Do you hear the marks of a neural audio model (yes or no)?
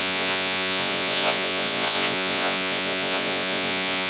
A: yes